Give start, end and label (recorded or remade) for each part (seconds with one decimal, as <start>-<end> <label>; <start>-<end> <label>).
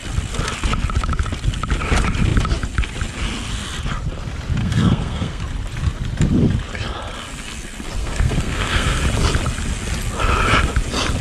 0.0-4.6 recorded; 4.6-5.4 remade; 5.4-8.0 recorded; 8.0-9.0 remade; 9.0-11.2 recorded